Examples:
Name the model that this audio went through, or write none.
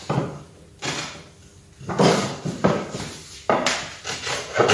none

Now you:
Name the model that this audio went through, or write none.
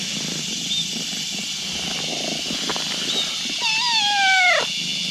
none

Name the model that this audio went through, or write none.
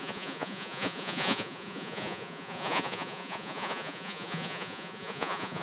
vocoder, Vocos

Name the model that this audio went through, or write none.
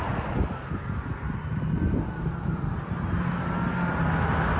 none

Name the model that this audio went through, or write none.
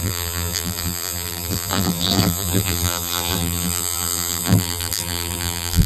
vocoder, BigVGAN v2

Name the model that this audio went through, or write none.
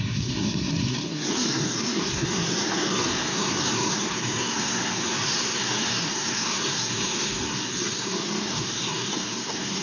codec, SNAC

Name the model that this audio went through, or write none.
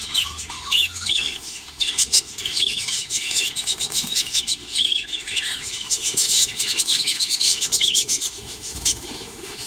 autoencoder, DAC-VAE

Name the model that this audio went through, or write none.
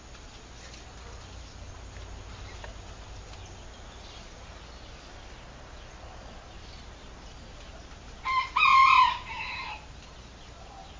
none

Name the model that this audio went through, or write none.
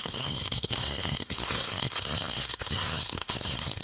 codec, SNAC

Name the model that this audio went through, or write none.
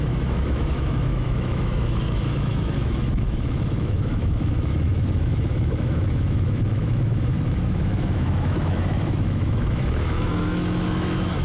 autoencoder, DAC-VAE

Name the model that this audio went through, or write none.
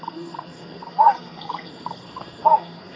codec, SNAC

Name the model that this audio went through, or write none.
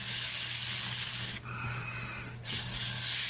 codec, DAC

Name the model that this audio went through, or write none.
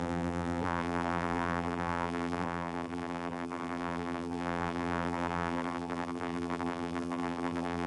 vocoder, BigVGAN v2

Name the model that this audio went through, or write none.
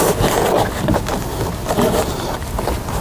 none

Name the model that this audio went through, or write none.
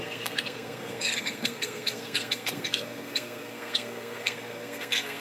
codec, SNAC